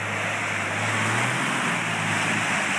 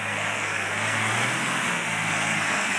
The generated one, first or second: second